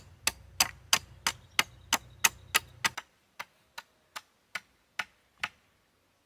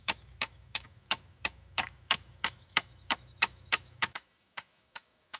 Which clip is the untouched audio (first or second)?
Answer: first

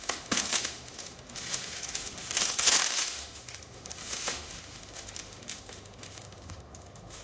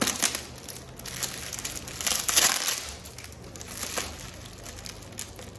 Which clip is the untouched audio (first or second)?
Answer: second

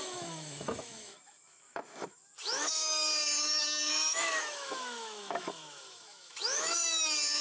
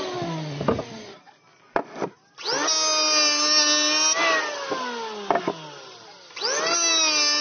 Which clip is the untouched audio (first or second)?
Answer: second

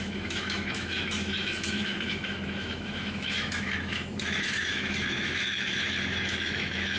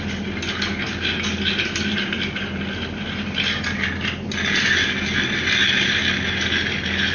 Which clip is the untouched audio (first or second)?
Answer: second